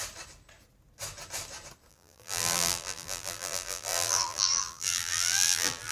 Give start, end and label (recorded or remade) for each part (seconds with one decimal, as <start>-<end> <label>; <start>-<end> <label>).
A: 0.0-1.9 recorded; 1.9-5.9 remade

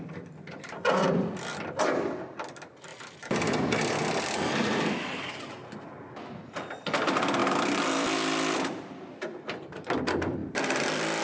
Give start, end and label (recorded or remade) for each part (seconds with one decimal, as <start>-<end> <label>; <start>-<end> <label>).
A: 0.0-1.0 recorded; 1.0-1.8 remade; 1.8-7.4 recorded; 7.4-9.3 remade; 9.3-10.4 recorded; 10.4-11.2 remade